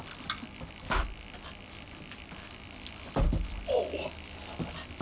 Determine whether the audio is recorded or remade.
recorded